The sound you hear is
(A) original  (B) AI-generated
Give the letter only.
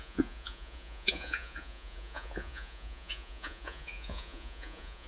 B